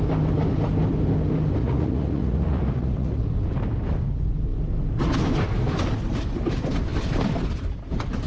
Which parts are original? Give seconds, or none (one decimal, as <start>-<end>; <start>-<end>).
0.0-1.6; 3.2-8.3